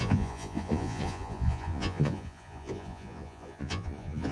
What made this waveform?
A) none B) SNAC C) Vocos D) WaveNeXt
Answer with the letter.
C